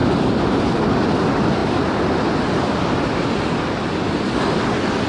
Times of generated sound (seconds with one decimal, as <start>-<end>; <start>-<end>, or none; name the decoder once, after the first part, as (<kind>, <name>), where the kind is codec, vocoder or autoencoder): none